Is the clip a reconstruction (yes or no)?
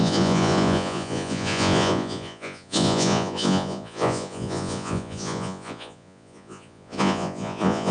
yes